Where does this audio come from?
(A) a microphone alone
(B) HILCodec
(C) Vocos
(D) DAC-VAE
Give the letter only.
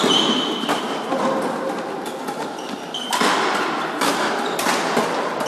A